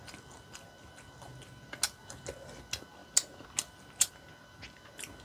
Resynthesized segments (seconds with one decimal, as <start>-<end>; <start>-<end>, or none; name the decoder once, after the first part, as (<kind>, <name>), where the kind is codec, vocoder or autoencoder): none